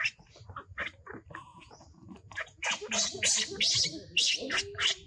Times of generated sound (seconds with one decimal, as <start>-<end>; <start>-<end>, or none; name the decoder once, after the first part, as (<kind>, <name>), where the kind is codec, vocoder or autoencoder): 1.5-2.6 (vocoder, Vocos)